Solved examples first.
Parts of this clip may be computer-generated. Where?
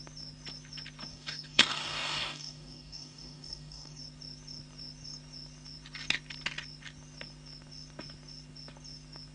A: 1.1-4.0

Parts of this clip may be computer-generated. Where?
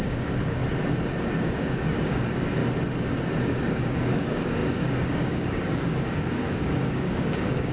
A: 0.0-0.6; 1.4-2.6; 3.4-7.7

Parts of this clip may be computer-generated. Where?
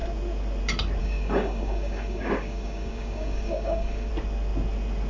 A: 1.0-4.1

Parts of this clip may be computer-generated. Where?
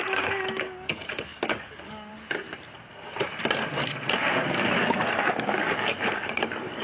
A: 0.0-2.1; 5.3-6.8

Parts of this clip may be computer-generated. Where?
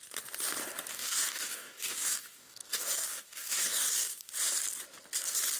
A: 0.9-4.3